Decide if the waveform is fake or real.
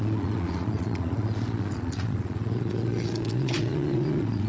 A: fake